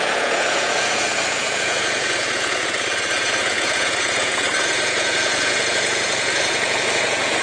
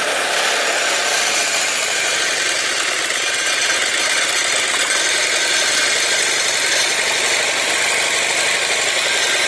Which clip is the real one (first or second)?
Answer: second